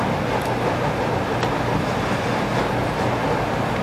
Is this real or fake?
real